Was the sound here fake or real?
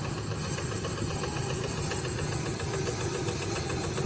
real